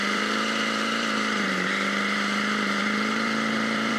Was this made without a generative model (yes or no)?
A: no